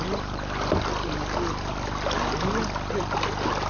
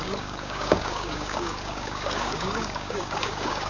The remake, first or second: second